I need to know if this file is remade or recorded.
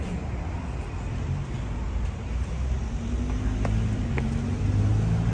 recorded